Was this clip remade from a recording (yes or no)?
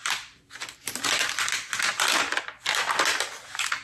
no